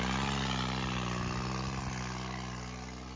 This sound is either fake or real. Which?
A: real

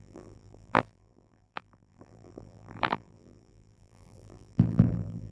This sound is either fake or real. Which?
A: fake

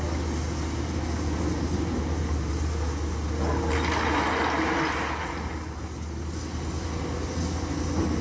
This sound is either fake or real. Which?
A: real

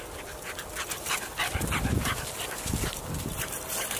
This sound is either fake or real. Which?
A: fake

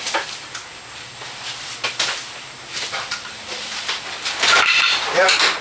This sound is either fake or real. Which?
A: fake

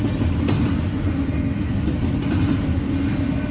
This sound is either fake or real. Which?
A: real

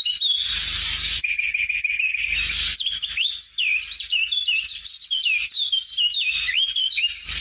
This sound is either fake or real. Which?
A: real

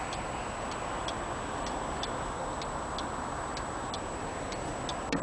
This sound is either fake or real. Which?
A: real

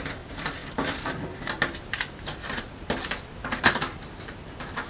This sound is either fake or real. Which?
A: fake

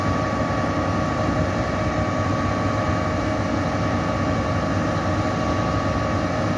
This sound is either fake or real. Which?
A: real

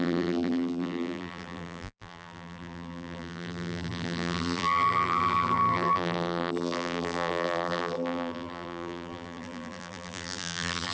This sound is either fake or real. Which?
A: fake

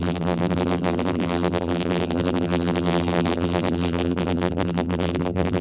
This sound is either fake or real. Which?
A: fake